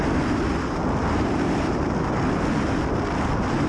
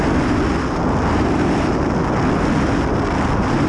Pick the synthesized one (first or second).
first